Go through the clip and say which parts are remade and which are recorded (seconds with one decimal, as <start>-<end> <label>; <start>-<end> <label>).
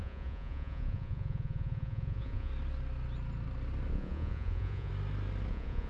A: 0.0-2.5 remade; 2.5-3.9 recorded; 3.9-4.9 remade; 4.9-5.5 recorded; 5.5-5.9 remade